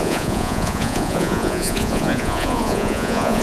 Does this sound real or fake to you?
fake